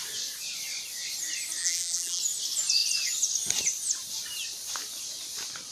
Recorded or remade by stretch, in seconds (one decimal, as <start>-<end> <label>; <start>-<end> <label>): 0.0-1.6 recorded; 1.6-2.2 remade; 2.2-5.7 recorded